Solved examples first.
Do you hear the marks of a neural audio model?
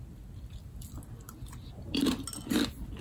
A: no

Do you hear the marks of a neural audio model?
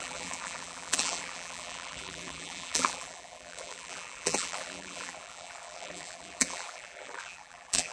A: yes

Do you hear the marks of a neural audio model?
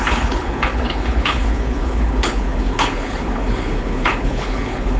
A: yes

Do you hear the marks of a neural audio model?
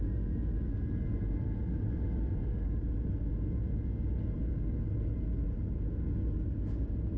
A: no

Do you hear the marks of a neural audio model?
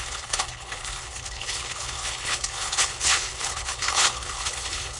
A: yes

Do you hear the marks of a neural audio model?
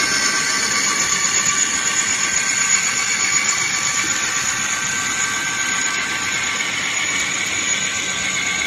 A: no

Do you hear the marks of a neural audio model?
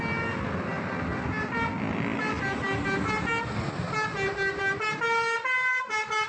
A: no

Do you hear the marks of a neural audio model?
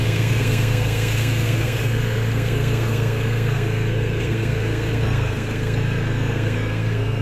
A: yes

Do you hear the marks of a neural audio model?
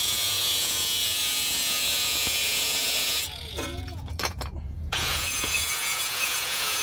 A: yes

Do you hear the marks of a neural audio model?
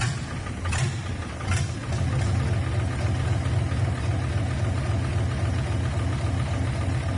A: no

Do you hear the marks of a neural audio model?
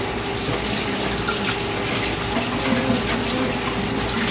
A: no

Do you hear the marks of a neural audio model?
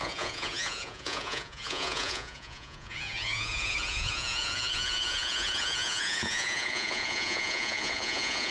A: yes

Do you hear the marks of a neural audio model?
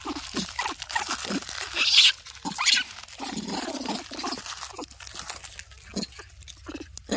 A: no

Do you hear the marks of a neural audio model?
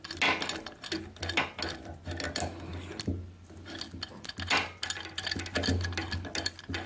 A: no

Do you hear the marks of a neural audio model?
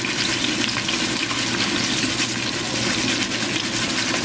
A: no